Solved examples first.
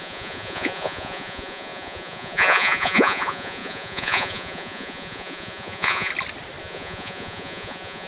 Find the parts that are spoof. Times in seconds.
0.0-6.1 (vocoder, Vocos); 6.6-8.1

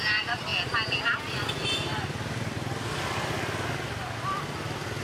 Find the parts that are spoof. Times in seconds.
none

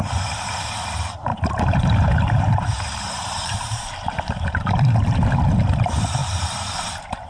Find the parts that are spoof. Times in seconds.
1.3-5.3 (vocoder, BigVGAN v2); 6.2-7.3

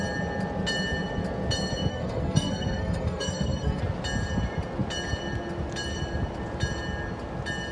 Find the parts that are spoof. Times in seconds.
1.9-3.8 (codec, SNAC)

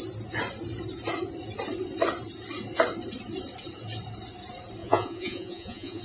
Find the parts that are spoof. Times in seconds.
4.8-6.0 (vocoder, Vocos)

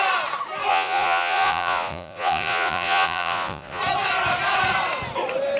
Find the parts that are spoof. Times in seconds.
0.7-3.8 (vocoder, Vocos)